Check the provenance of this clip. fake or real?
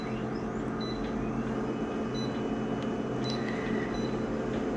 real